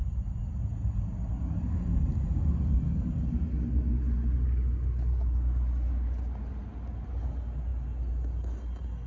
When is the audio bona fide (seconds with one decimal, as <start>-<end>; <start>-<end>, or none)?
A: 0.0-9.1